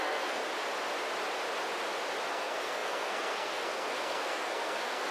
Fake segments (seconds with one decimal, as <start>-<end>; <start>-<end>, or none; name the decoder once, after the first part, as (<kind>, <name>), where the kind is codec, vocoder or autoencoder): 0.0-0.4 (codec, SNAC); 2.3-5.1